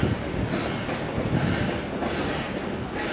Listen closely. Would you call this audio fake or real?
real